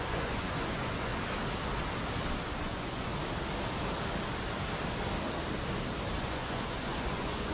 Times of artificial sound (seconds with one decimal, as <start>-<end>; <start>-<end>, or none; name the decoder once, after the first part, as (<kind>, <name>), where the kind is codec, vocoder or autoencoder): 0.0-1.1 (vocoder, Vocos); 2.6-3.1; 6.2-7.5